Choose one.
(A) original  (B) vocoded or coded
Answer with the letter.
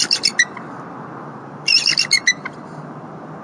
A